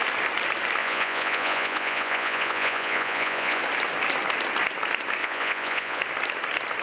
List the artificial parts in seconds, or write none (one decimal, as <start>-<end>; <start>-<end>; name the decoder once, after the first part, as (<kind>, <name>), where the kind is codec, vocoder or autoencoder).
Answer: 0.8-3.6 (vocoder, Vocos); 5.2-6.0